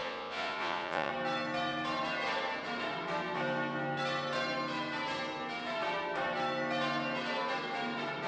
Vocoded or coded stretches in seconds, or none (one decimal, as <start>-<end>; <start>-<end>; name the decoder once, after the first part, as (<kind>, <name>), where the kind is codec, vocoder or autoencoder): 0.0-1.1 (vocoder, Vocos)